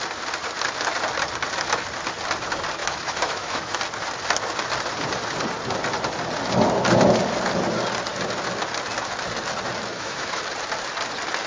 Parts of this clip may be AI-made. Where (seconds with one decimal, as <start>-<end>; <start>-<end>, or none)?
2.8-3.8; 9.9-10.4

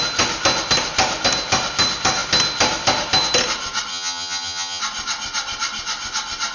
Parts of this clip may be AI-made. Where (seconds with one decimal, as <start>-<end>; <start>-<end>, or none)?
3.9-4.8

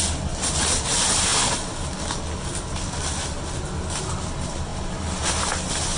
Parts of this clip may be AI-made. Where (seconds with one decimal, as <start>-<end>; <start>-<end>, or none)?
none

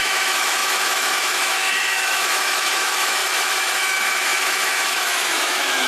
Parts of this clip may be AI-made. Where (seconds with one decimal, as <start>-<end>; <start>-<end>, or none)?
0.0-5.9

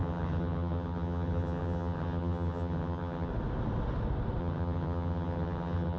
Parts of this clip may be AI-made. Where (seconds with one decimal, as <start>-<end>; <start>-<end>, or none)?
0.0-3.3; 4.4-6.0